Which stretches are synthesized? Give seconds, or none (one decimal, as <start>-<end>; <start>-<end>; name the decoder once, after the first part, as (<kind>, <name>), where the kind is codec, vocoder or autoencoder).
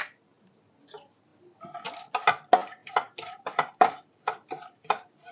2.8-5.3 (vocoder, BigVGAN v2)